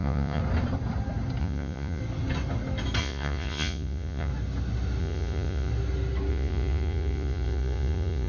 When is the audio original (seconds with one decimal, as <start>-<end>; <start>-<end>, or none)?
0.4-1.4; 2.0-3.0; 4.3-5.0; 5.7-6.3